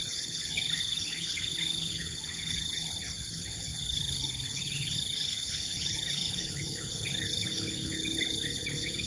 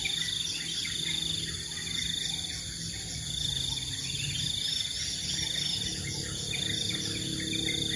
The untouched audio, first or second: second